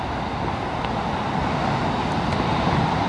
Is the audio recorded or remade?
recorded